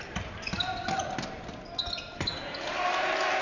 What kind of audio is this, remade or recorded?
recorded